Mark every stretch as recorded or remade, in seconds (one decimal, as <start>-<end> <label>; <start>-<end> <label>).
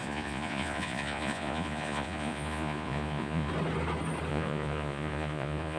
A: 0.0-3.5 remade; 3.5-4.3 recorded; 4.3-5.8 remade